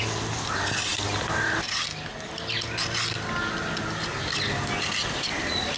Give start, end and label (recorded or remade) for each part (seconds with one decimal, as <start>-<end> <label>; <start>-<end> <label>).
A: 0.0-5.8 recorded